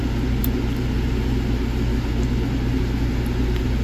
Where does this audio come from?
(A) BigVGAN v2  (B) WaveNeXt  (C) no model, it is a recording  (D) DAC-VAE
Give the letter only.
C